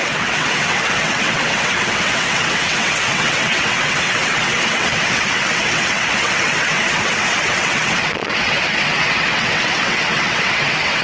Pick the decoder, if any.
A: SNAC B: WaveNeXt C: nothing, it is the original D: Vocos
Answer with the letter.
B